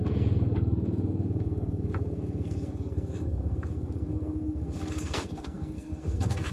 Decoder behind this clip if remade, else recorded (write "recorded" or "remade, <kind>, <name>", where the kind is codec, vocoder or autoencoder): remade, codec, SNAC